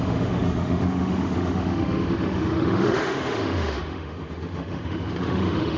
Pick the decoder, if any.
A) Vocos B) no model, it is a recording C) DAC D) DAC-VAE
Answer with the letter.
D